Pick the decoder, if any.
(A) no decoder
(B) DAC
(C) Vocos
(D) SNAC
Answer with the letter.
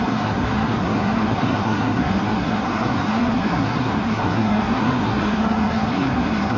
D